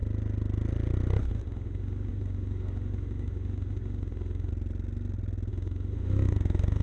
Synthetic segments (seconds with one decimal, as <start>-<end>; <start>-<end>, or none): 1.2-4.5; 5.5-6.8